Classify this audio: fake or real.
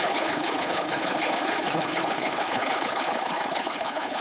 fake